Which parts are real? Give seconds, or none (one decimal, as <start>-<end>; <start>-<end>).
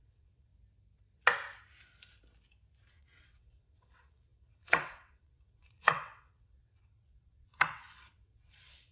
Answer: 0.5-2.9